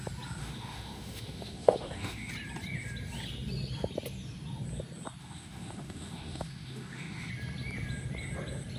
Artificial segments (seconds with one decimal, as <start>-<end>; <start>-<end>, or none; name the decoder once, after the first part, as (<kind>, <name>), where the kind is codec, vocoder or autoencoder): 0.4-2.3 (autoencoder, DAC-VAE); 5.2-7.3